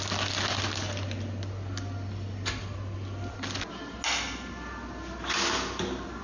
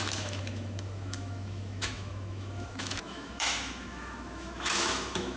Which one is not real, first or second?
second